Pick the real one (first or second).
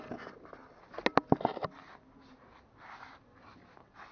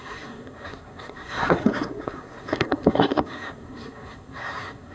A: first